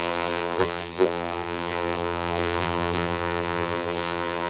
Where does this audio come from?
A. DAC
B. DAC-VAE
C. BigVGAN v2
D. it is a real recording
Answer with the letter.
C